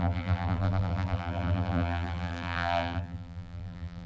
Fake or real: fake